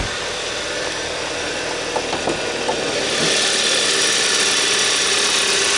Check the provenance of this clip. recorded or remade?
recorded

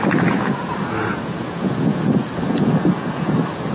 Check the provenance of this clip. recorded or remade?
remade